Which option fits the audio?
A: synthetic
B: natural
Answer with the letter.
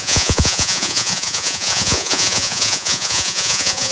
A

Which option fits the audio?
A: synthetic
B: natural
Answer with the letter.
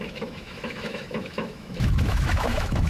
A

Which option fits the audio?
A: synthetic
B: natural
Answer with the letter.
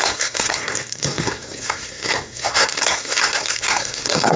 A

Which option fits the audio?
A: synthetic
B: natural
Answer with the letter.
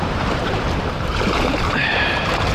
A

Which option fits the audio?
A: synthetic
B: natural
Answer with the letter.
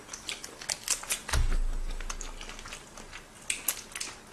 B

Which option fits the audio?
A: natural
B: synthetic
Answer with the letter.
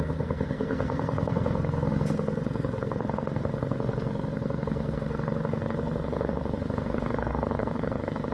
B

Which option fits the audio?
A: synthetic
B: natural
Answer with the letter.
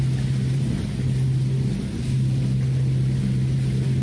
B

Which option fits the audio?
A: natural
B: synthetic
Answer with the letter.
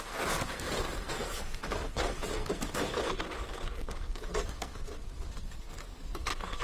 B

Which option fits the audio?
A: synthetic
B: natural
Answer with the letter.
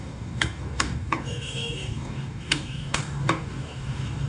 A